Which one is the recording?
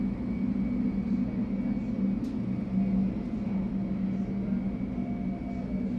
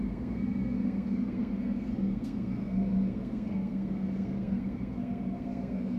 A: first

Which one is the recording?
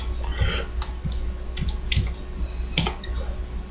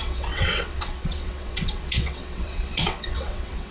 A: first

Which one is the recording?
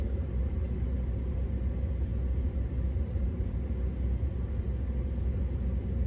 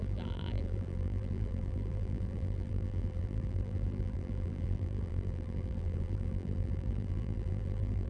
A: first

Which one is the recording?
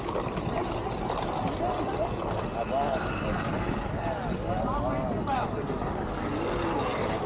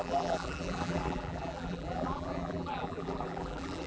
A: first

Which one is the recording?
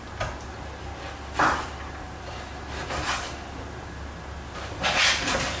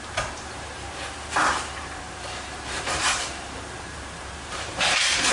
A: first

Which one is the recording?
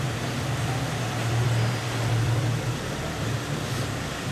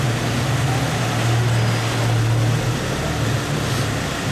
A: second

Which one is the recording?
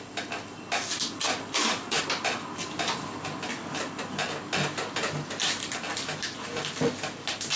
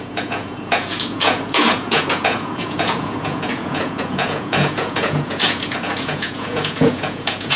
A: first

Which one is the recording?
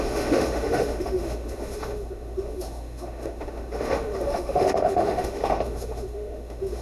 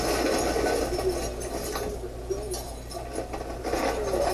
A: second